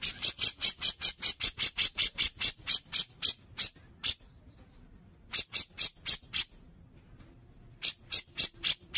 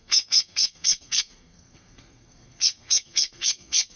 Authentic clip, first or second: first